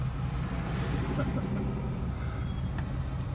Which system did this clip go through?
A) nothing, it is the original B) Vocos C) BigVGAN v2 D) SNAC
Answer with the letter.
A